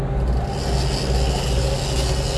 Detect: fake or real real